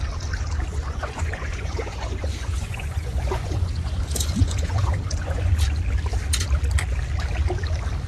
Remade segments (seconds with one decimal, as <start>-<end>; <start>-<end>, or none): 0.7-5.5